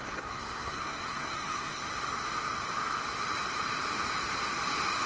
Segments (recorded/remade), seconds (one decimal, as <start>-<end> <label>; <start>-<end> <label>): 0.0-1.8 remade; 1.8-5.1 recorded